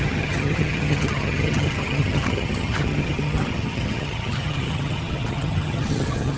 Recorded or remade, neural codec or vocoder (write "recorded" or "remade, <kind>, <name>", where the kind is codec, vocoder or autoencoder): remade, vocoder, HiFi-GAN